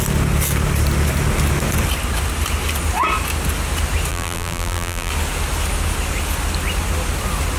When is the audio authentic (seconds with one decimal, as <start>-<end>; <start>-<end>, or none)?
0.0-4.1; 5.1-7.6